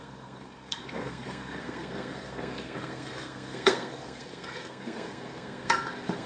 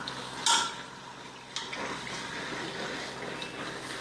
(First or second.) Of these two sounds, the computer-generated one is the first